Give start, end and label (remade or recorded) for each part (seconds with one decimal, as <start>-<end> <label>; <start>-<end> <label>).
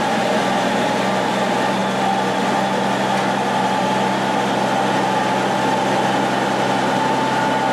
0.0-7.7 recorded